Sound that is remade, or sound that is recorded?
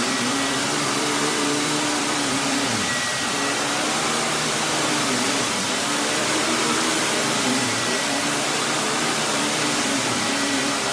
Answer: remade